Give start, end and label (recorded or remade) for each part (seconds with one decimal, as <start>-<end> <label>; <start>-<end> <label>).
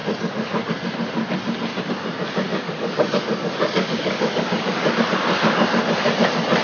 0.0-2.5 recorded; 2.5-5.0 remade; 5.0-6.6 recorded